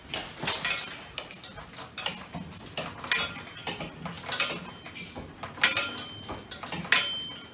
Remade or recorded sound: recorded